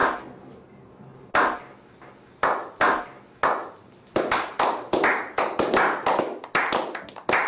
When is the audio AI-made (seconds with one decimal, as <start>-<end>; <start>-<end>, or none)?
none